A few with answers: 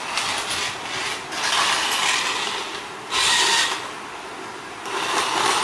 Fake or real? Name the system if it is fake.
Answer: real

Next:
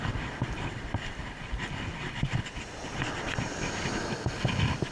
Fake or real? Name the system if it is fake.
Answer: real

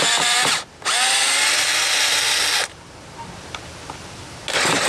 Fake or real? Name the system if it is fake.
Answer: real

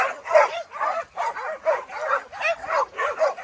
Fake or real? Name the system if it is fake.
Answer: real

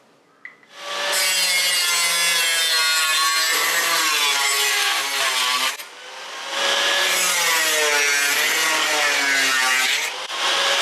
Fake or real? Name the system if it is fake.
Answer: real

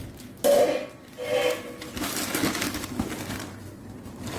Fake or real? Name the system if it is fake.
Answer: fake, vocoder, BigVGAN v2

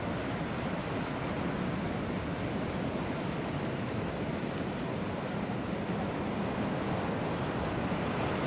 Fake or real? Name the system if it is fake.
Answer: real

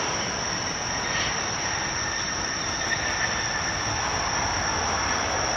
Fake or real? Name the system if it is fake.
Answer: real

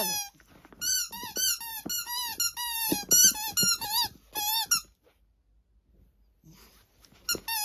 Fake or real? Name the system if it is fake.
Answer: real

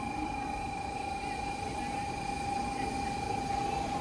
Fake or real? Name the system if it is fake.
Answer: fake, vocoder, BigVGAN v2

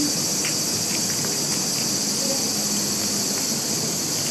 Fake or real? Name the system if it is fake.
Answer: real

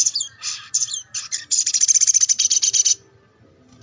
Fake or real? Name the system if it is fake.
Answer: real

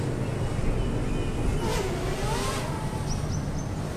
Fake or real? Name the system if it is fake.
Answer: real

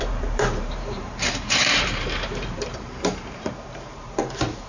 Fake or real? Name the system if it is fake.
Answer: fake, vocoder, BigVGAN v2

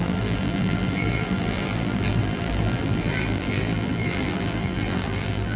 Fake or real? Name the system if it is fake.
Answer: fake, vocoder, BigVGAN v2